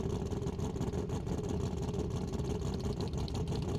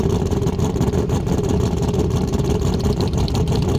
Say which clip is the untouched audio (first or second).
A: first